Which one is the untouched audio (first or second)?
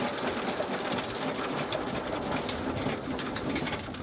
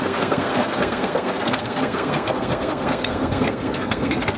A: first